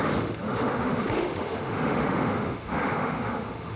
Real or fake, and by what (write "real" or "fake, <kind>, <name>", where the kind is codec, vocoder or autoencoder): fake, autoencoder, DAC-VAE